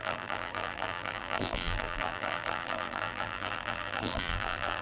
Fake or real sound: fake